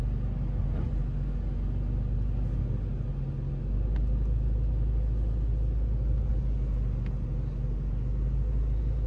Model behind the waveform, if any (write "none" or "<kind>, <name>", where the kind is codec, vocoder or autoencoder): none